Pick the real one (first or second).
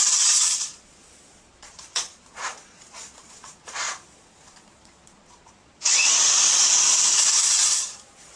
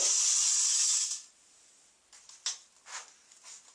second